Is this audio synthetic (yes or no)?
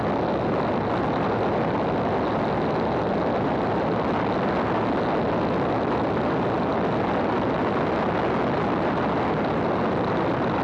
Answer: no